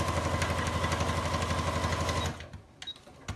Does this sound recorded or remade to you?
recorded